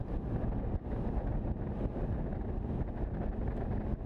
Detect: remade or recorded recorded